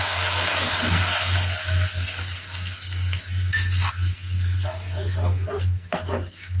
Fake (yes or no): yes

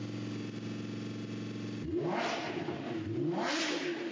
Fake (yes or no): no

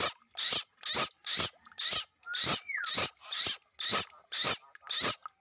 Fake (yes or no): no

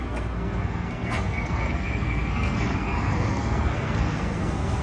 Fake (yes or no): yes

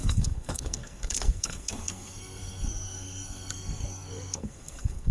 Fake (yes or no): yes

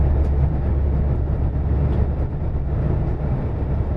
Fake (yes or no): no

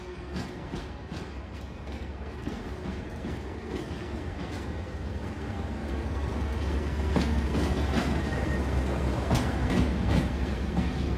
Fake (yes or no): yes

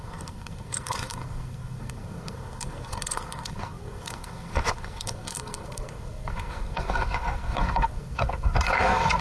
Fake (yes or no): yes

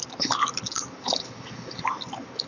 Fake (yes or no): no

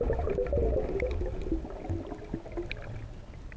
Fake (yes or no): no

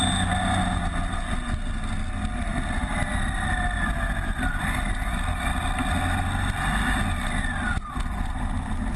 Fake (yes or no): no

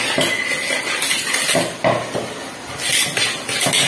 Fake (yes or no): no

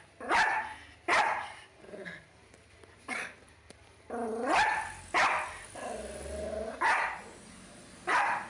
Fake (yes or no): no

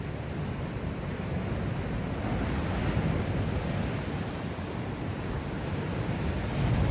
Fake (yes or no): no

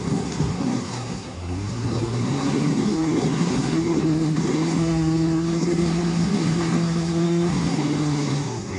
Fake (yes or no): yes